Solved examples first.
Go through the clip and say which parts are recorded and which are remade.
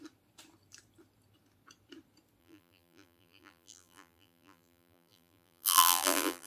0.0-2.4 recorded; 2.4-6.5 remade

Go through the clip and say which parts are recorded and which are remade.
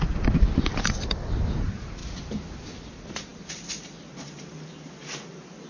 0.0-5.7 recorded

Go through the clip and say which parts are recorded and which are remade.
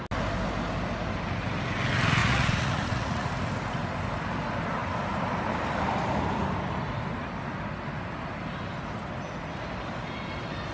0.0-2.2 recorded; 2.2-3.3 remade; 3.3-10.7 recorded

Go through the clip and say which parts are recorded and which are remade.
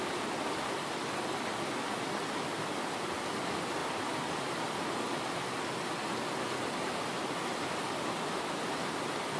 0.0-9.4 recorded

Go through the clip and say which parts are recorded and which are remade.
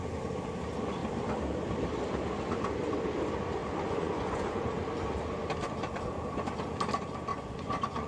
0.0-3.6 recorded; 3.6-4.6 remade; 4.6-7.3 recorded; 7.3-8.1 remade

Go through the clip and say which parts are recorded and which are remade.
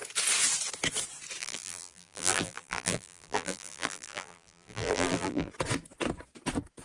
0.0-1.4 recorded; 1.4-5.5 remade; 5.5-6.8 recorded